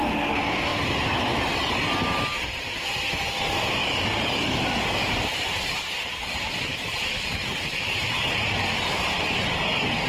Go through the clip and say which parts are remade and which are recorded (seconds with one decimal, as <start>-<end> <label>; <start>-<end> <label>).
0.0-3.8 recorded; 3.8-6.4 remade; 6.4-10.1 recorded